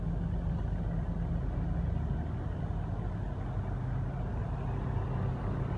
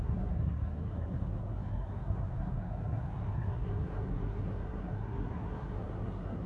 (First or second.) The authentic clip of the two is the first